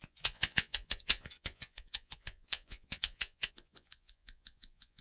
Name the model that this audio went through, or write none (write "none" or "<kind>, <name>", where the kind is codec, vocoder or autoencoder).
vocoder, Vocos